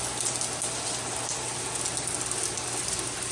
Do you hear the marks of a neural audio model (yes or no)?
no